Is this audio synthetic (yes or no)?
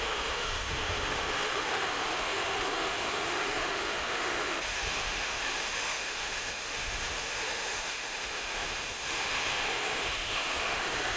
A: yes